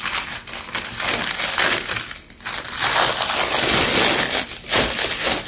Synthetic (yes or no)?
no